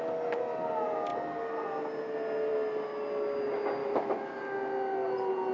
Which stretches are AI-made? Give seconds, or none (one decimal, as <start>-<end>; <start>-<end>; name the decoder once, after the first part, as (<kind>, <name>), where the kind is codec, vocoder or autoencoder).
3.8-4.4 (autoencoder, DAC-VAE)